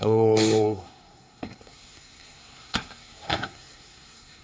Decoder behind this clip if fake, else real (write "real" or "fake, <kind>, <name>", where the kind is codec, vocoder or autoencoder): fake, codec, SNAC